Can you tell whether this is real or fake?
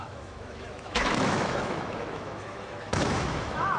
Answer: fake